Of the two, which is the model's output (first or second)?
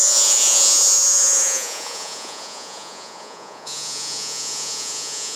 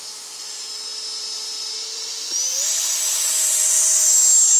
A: first